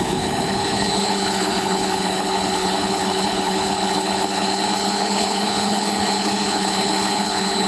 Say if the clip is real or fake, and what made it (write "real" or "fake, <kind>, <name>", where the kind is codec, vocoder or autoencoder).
fake, codec, HILCodec